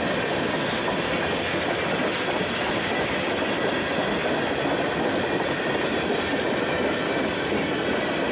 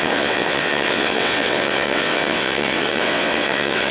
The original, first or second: first